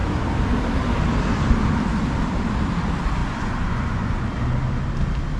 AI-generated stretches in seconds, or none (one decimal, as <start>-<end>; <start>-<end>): 3.2-4.2